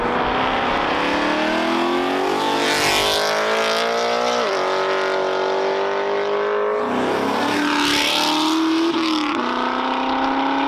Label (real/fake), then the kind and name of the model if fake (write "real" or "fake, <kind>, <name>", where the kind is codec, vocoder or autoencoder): real